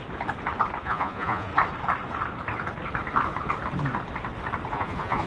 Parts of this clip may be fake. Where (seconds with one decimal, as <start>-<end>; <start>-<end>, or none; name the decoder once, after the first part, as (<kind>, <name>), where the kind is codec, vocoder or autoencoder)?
0.8-1.5 (vocoder, Vocos); 4.7-5.3